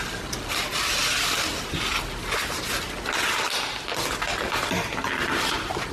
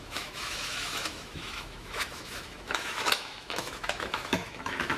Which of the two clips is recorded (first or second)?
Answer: first